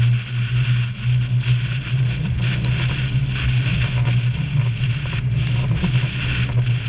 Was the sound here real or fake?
real